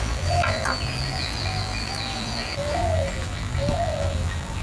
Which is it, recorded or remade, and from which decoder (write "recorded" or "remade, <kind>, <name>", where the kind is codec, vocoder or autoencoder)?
remade, vocoder, BigVGAN v2